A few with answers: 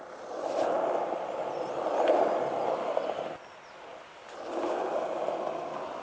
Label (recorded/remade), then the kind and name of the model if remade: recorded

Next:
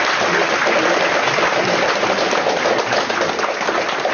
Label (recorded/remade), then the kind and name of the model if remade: recorded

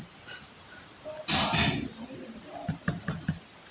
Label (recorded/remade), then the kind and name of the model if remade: recorded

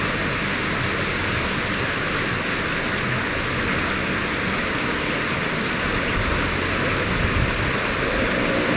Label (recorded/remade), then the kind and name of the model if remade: recorded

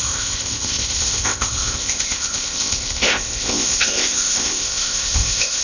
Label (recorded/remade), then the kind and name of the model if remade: remade, codec, ZipCodec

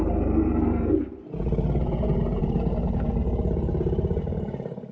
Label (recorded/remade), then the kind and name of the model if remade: recorded